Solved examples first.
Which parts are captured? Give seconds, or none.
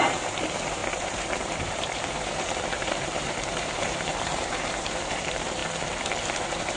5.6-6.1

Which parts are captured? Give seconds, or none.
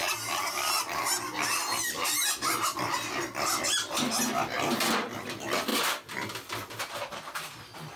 0.0-5.7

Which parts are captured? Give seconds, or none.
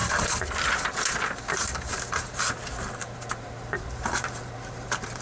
0.6-1.9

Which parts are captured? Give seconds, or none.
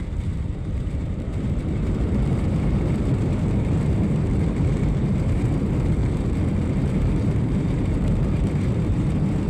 6.0-6.7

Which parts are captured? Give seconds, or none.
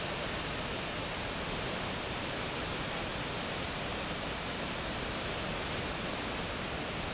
0.0-7.1